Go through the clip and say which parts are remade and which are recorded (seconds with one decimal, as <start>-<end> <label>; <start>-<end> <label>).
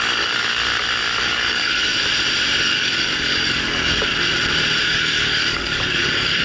0.0-0.6 remade; 0.6-1.2 recorded; 1.2-1.9 remade; 1.9-2.6 recorded; 2.6-4.1 remade; 4.1-4.8 recorded; 4.8-6.4 remade